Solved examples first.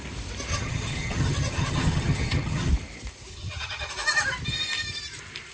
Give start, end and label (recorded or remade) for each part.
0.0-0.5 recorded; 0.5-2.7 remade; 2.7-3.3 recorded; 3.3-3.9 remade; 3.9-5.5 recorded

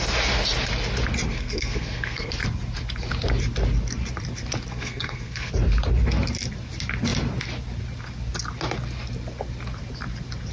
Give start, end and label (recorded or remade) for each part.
0.0-1.3 recorded; 1.3-2.3 remade; 2.3-4.7 recorded; 4.7-5.5 remade; 5.5-10.5 recorded

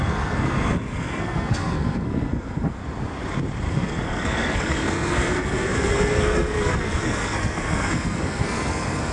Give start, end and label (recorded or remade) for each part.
0.0-2.8 remade; 2.8-3.7 recorded; 3.7-9.1 remade

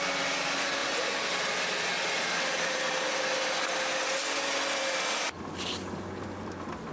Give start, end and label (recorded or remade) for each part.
0.0-6.9 recorded